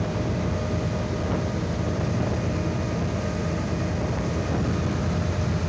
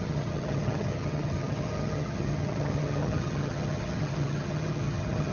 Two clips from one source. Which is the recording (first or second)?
first